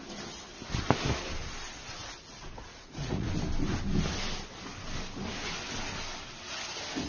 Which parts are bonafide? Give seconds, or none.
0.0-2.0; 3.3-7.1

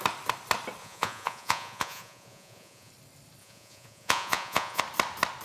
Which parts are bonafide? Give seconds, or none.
0.0-0.8; 2.9-3.4; 4.8-5.4

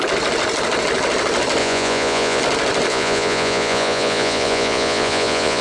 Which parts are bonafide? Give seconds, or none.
0.0-1.6; 2.4-2.9

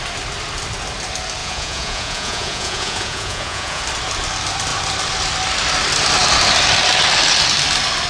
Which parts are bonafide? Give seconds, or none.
0.0-1.4; 3.8-8.1